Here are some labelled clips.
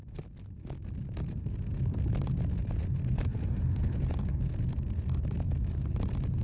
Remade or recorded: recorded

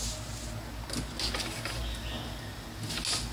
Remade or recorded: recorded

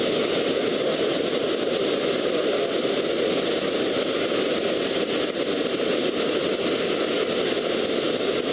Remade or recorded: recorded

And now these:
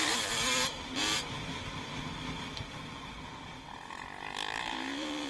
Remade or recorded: recorded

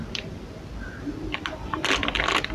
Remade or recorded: recorded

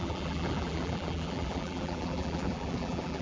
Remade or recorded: remade